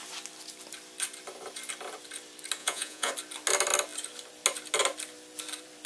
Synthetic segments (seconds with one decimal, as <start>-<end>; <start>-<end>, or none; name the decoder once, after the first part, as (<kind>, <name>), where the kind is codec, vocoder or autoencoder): 2.6-3.1 (vocoder, Vocos)